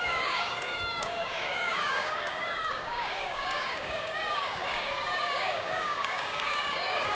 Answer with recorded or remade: remade